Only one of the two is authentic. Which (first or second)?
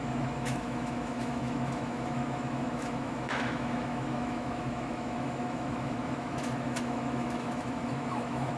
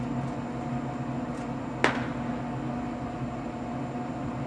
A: second